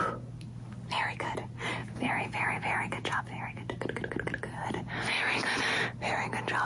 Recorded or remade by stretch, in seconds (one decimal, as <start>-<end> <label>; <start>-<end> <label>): 0.0-1.8 recorded; 1.8-3.2 remade; 3.2-6.6 recorded